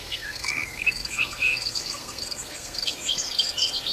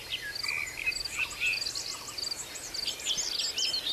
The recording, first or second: second